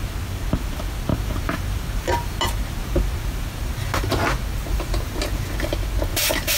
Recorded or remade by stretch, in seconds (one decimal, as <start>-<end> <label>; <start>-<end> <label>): 0.0-1.1 recorded; 1.1-4.1 remade; 4.1-4.7 recorded; 4.7-5.2 remade; 5.2-6.1 recorded; 6.1-6.6 remade